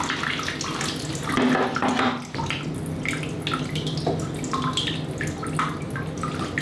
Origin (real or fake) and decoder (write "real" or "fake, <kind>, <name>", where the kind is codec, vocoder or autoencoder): real